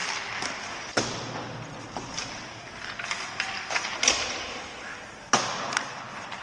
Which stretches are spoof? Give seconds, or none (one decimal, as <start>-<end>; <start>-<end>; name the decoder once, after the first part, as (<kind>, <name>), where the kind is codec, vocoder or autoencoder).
3.8-4.9 (vocoder, BigVGAN v2)